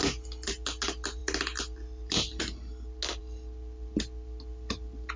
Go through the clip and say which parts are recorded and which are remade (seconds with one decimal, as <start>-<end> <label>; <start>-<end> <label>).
0.0-5.2 recorded